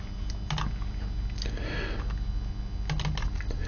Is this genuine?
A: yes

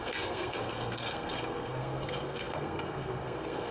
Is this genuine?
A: no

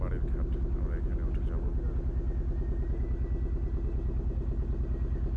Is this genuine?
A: yes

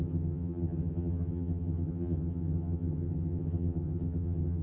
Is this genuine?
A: no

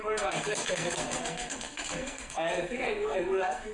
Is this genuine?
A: no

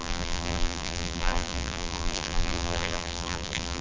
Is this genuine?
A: no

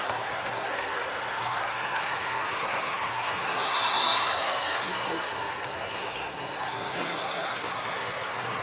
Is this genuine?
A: no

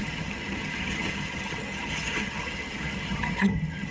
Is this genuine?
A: no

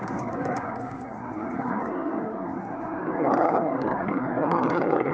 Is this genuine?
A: no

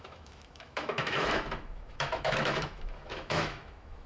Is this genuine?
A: no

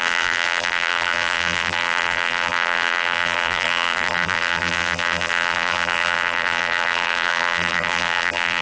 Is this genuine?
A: no